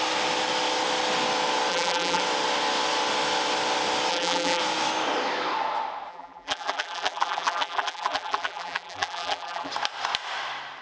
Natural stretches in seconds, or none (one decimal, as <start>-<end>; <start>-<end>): 0.0-1.7; 2.2-4.1; 4.6-6.1; 9.7-10.8